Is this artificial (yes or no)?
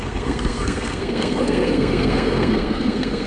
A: yes